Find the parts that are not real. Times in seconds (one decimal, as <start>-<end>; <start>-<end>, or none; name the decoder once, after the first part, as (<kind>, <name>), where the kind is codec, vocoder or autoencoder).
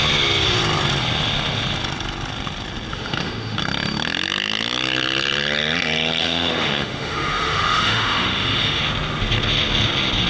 2.9-3.6 (autoencoder, DAC-VAE); 6.2-8.8